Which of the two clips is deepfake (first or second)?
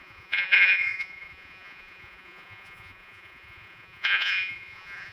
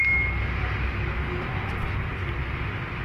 first